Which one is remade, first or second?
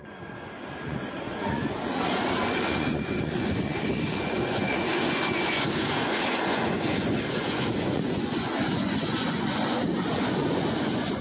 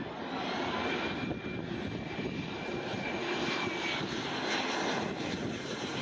first